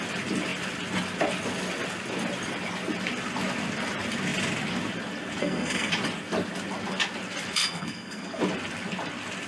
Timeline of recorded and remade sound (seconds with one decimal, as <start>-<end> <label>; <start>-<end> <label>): 0.0-5.4 recorded; 5.4-5.9 remade; 5.9-7.6 recorded; 7.6-8.4 remade; 8.4-9.5 recorded